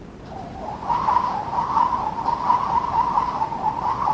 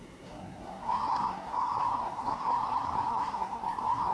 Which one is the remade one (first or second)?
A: second